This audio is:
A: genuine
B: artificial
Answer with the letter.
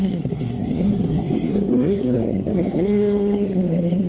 B